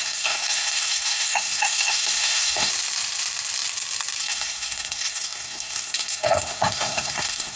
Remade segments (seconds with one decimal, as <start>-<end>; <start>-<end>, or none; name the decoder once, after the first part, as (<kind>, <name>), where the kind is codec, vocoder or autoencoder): 0.0-2.7 (codec, SNAC); 4.2-7.6